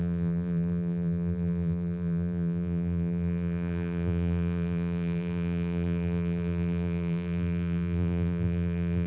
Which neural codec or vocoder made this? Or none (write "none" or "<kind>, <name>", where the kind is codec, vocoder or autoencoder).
vocoder, BigVGAN v2